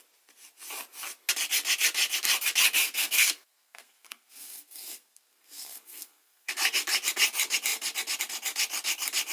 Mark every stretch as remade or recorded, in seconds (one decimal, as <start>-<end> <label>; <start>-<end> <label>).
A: 0.0-2.8 recorded; 2.8-6.5 remade; 6.5-9.3 recorded